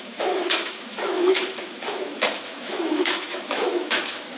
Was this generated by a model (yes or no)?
yes